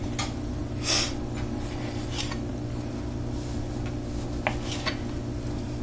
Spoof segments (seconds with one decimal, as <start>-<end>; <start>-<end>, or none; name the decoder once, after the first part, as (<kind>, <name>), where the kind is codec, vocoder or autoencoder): none